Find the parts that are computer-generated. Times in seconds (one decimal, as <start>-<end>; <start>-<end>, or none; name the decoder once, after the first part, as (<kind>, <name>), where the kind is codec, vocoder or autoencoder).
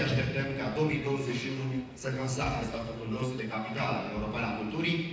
0.9-4.0 (codec, SNAC)